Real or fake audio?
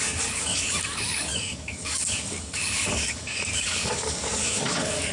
fake